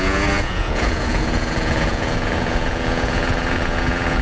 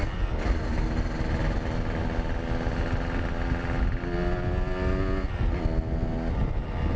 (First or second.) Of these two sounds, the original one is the second